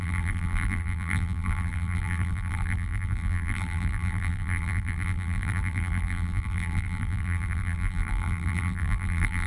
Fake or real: fake